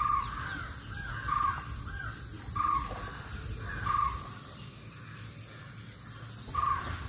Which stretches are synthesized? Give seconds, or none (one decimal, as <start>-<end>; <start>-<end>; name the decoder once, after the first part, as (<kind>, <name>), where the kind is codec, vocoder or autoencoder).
none